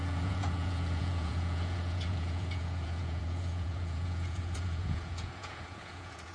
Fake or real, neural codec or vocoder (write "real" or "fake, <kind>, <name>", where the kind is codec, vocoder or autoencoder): fake, vocoder, Vocos